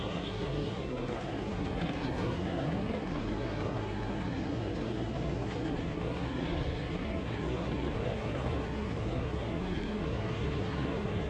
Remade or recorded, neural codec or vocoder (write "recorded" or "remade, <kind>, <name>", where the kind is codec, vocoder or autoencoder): remade, codec, SNAC